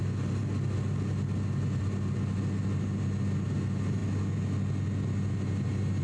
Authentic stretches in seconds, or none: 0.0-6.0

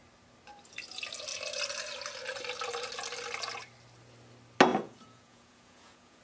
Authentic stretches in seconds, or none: 0.0-4.7

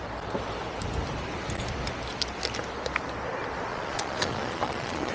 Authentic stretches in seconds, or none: 0.0-3.7